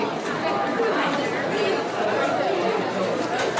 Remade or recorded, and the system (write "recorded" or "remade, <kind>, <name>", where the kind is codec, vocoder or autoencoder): recorded